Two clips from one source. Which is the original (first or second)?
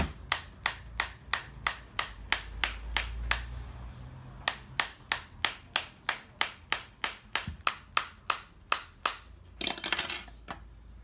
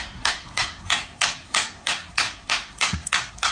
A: first